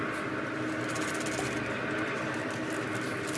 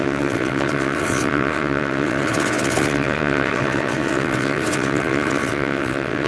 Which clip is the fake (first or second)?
second